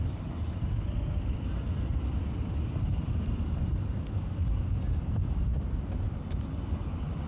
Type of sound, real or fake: real